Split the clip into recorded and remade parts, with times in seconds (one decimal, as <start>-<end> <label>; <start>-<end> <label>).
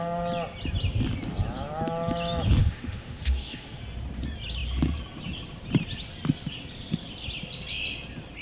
0.0-2.6 recorded; 2.6-3.8 remade; 3.8-8.4 recorded